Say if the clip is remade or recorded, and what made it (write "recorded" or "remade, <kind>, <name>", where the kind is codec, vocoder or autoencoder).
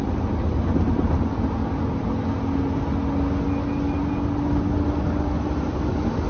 recorded